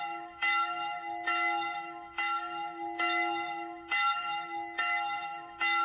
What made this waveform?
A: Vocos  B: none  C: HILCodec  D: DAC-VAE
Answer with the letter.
D